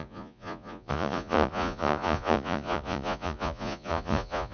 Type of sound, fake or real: fake